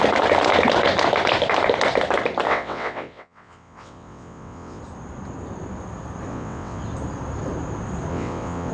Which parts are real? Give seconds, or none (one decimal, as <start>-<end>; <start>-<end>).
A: 0.0-2.5; 4.8-6.3; 6.8-8.1

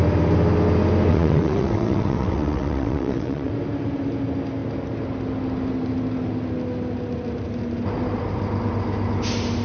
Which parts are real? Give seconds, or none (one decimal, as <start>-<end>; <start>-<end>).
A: 0.0-1.1; 3.5-9.6

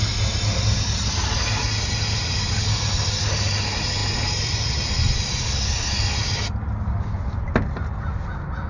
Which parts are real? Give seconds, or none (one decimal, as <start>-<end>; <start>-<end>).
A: 0.0-8.7

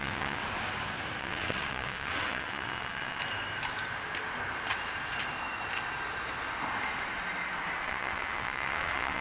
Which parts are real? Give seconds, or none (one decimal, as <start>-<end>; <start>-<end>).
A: 0.4-1.2; 3.2-7.8

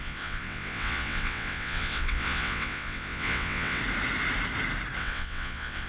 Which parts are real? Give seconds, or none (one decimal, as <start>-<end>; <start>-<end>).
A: 3.8-5.0